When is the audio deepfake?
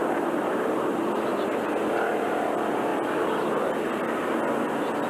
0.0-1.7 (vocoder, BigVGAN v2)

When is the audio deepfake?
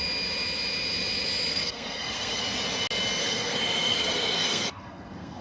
1.5-2.4 (codec, SNAC); 3.2-5.4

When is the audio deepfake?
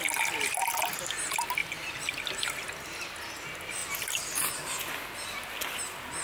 none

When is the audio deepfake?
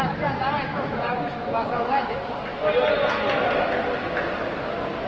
0.7-2.2 (autoencoder, DAC-VAE)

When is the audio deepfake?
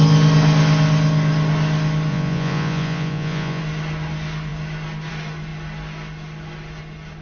2.1-3.6 (vocoder, Vocos)